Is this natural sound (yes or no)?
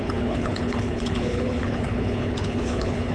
no